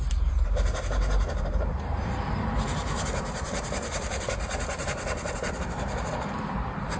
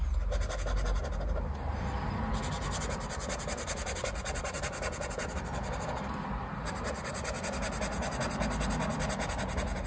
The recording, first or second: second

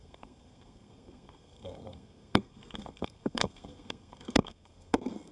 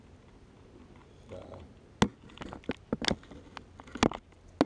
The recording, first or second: second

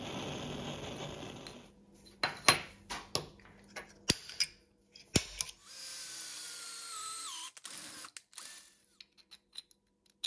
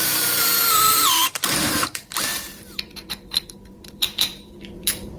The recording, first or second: first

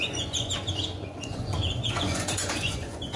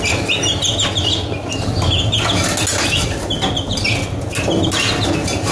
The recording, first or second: second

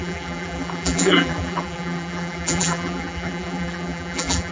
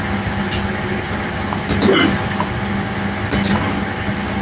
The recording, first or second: second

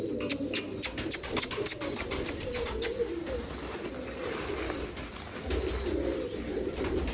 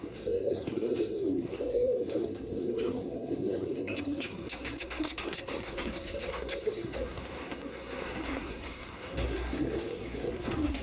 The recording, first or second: first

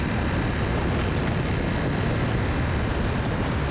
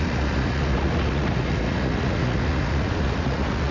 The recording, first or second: first